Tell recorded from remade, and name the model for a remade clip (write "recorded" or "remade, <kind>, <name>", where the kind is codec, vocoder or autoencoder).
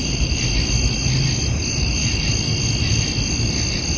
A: recorded